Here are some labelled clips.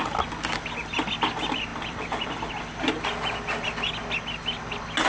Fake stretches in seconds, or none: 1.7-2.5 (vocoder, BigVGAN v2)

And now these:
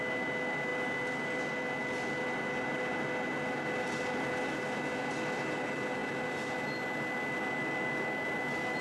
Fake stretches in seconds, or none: none

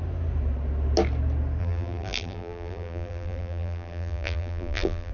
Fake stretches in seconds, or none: 1.6-5.1 (vocoder, BigVGAN v2)

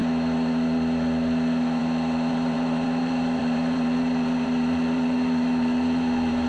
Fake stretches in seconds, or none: 2.3-6.5 (vocoder, BigVGAN v2)

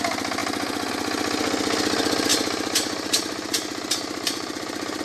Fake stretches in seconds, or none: 2.3-5.0 (vocoder, BigVGAN v2)